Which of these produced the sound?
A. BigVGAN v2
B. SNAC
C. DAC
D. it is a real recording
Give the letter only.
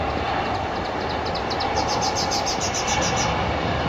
D